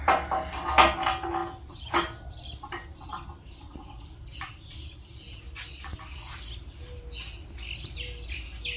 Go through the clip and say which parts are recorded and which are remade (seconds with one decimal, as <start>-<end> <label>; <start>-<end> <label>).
0.0-8.8 recorded